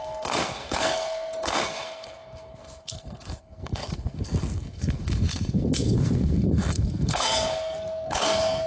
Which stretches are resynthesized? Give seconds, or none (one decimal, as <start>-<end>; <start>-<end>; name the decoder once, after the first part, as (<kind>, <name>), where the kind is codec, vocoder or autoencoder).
0.0-8.7 (codec, SNAC)